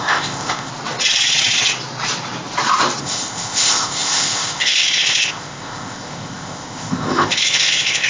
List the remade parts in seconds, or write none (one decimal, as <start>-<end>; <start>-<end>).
0.0-0.7; 3.0-8.1

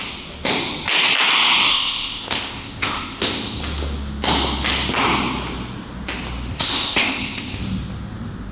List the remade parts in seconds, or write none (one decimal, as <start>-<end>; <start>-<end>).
1.7-3.6; 6.5-7.6